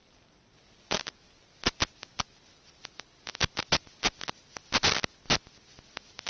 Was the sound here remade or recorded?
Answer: recorded